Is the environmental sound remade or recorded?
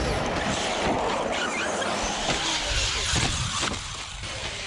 recorded